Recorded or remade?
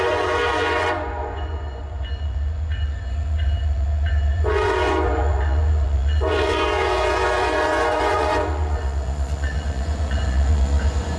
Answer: remade